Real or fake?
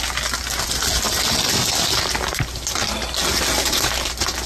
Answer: real